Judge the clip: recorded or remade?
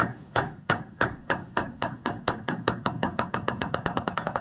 remade